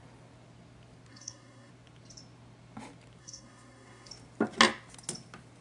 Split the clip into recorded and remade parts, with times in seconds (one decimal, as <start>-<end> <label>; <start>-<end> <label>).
0.0-1.1 recorded; 1.1-1.7 remade; 1.7-3.2 recorded; 3.2-4.1 remade; 4.1-5.6 recorded